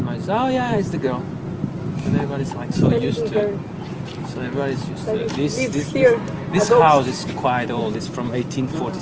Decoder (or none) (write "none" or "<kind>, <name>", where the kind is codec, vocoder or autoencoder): vocoder, BigVGAN v2